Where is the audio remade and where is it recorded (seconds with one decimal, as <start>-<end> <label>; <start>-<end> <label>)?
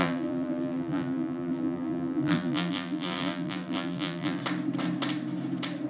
0.0-4.4 remade; 4.4-5.9 recorded